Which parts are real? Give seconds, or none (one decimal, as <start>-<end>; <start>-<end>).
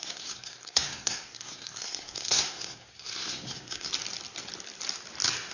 3.9-5.5